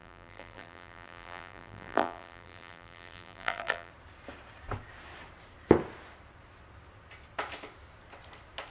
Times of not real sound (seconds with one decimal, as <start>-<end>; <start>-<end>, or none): 0.0-3.9